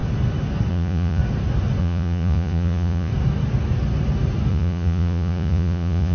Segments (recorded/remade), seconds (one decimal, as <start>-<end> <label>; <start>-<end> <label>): 0.0-0.7 recorded; 0.7-1.2 remade; 1.2-1.8 recorded; 1.8-3.1 remade; 3.1-4.5 recorded; 4.5-6.1 remade